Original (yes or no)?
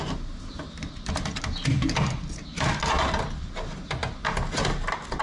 yes